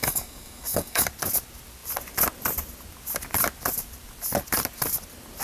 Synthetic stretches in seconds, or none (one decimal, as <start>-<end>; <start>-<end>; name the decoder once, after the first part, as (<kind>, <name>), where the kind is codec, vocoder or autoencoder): 0.0-1.1 (codec, DAC)